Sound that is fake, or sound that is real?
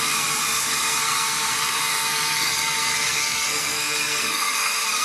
fake